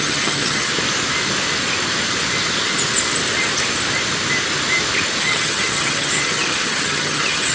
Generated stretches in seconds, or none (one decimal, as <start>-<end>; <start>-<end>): 0.0-0.7; 5.2-7.5

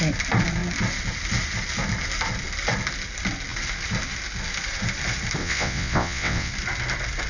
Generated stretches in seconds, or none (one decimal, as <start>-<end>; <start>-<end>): 5.4-6.5

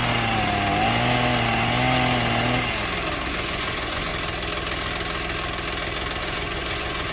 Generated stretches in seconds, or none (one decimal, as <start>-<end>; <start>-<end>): 3.3-4.1; 6.2-7.1

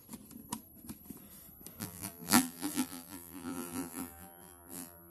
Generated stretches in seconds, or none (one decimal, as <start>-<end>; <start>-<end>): 1.8-5.1